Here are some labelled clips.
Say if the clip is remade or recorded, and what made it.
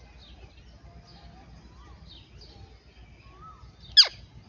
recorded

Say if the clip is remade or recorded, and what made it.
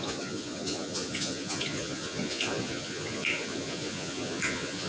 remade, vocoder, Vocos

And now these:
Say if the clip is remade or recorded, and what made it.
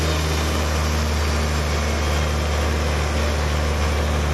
recorded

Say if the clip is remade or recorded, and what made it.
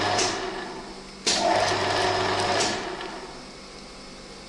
recorded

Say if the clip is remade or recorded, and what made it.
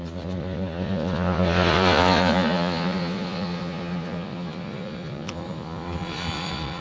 remade, vocoder, Vocos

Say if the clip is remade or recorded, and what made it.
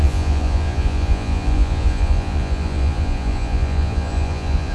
remade, vocoder, Vocos